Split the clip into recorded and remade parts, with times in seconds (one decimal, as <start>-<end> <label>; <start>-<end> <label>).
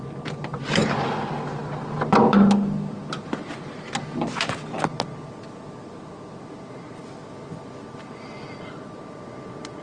0.0-9.8 recorded